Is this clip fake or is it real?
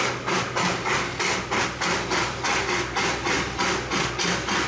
real